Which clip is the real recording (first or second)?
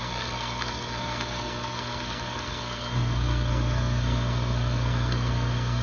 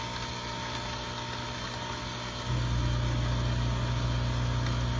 second